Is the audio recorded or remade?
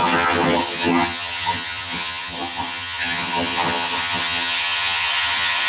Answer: remade